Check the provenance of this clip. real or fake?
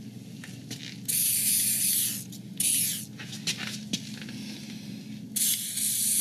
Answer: real